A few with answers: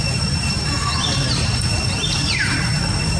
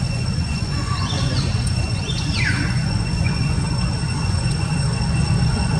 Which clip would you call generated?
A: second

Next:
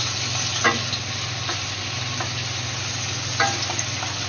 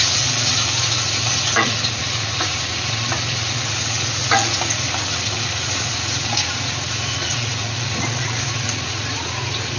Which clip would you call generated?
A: second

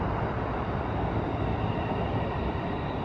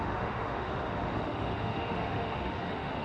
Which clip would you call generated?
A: second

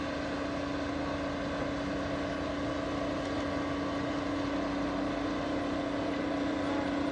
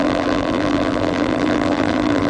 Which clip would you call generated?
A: second